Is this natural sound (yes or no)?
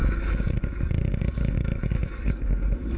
no